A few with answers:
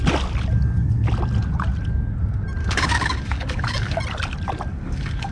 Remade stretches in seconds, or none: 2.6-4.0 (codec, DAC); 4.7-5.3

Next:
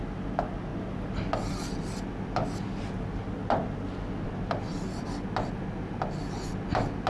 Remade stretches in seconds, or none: none